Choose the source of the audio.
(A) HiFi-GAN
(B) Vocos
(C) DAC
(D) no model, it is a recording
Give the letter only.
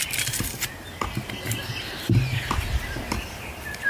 D